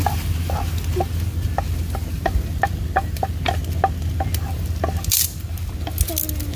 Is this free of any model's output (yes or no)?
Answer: yes